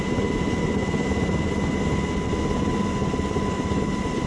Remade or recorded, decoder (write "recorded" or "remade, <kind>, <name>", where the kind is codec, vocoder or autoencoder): recorded